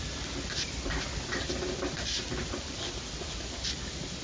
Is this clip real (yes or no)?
yes